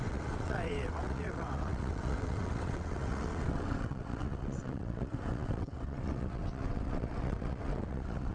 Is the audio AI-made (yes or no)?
yes